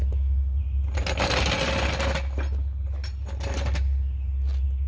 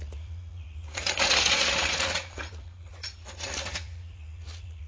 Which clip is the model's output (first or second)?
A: second